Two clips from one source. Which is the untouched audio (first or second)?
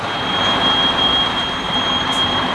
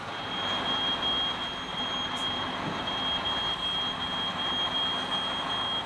second